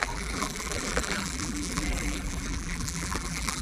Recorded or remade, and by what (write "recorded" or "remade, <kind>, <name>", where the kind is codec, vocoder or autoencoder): remade, vocoder, BigVGAN v2